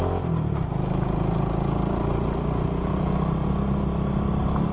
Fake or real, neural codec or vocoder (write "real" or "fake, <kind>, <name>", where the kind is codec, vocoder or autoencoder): real